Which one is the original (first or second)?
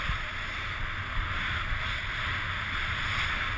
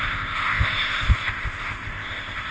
first